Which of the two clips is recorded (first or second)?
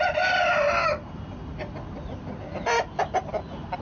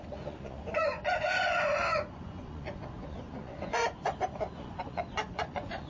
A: first